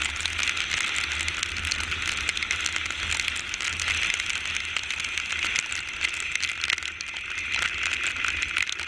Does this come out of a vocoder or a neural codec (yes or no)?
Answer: no